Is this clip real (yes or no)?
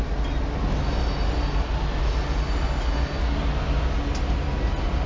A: yes